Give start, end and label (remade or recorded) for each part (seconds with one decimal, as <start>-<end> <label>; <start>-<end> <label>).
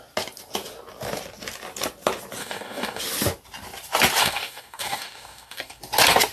0.0-2.4 recorded; 2.4-3.0 remade; 3.0-4.2 recorded; 4.2-5.8 remade; 5.8-6.3 recorded